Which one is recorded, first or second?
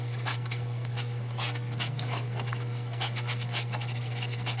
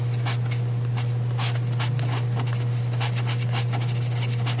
second